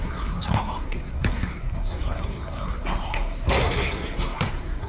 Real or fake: fake